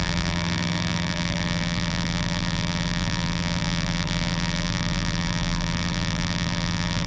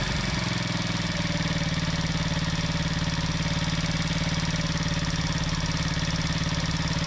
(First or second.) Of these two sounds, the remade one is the first